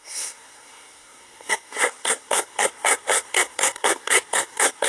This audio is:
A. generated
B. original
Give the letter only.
A